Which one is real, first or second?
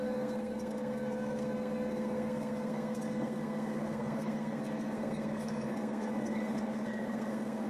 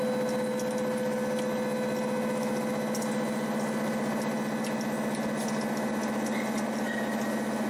second